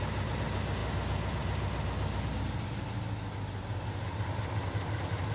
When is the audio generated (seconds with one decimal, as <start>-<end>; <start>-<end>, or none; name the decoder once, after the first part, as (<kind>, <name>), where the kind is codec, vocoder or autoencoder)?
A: none